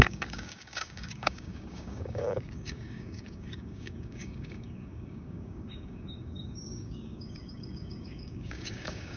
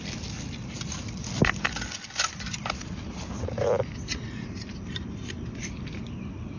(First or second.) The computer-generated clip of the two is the first